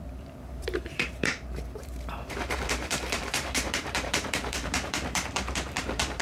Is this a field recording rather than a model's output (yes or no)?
no